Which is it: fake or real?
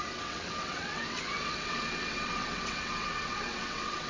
fake